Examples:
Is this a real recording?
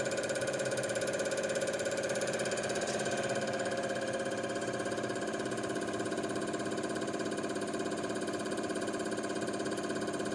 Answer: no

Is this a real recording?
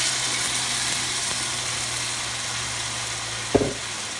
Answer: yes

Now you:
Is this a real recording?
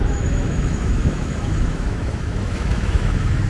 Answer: no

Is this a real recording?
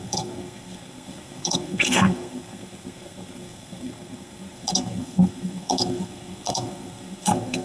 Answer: no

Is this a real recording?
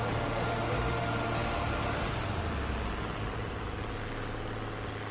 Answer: yes